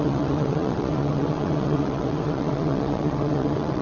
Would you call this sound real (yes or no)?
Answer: no